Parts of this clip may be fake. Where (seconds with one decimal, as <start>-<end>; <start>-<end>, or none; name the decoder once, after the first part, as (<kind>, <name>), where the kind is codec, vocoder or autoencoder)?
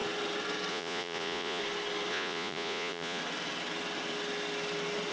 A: 0.7-1.6 (vocoder, Vocos); 2.1-3.2